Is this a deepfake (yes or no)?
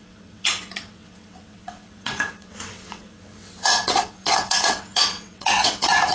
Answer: yes